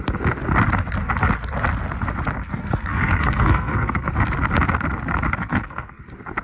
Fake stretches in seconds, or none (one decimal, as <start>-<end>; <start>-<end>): 2.4-4.1; 5.4-6.0